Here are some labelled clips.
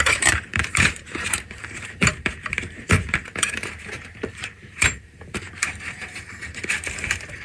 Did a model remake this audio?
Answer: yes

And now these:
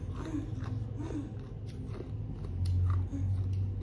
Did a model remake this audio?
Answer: no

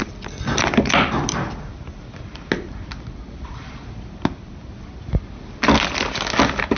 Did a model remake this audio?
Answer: no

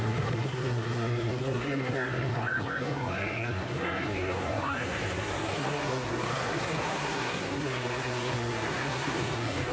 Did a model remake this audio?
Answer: yes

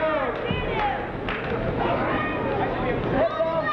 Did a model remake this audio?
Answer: no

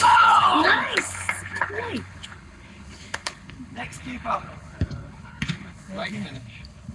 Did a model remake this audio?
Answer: yes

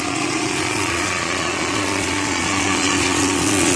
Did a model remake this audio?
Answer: yes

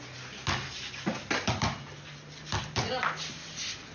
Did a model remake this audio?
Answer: no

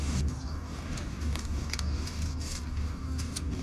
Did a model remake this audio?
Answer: yes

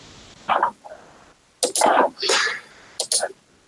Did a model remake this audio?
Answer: no